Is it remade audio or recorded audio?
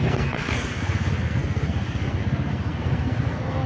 remade